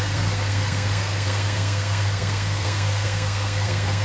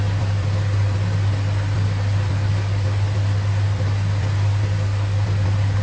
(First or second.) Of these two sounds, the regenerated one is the first